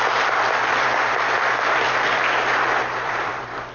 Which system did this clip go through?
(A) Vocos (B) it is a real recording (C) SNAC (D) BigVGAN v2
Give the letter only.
D